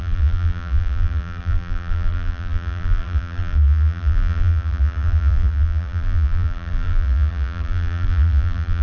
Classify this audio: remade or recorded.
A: remade